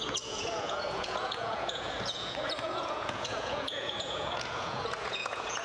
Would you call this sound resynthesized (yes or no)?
yes